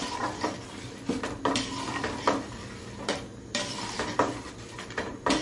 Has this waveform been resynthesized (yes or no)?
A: yes